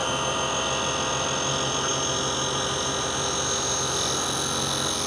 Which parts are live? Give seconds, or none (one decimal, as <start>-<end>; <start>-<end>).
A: 0.0-5.1